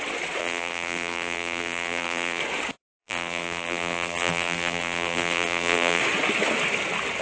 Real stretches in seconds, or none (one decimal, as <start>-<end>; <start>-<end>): 0.0-0.4; 2.4-3.0; 6.0-7.2